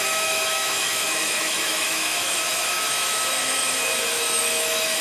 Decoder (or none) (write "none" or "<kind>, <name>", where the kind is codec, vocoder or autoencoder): autoencoder, DAC-VAE